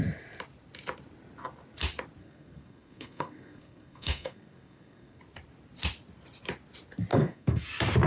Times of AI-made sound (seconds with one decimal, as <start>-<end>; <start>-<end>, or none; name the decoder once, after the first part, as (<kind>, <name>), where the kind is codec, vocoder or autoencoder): 2.2-5.2 (codec, SNAC); 7.1-7.6